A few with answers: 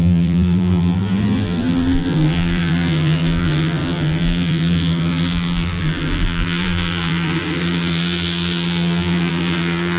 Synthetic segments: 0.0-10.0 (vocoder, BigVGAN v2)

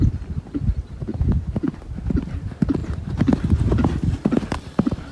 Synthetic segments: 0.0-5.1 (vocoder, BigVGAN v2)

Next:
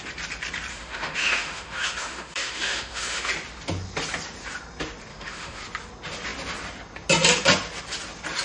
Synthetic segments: 0.7-3.3 (autoencoder, DAC-VAE); 5.1-5.6

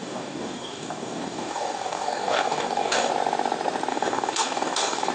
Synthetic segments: 0.0-3.1 (codec, DAC); 3.9-5.1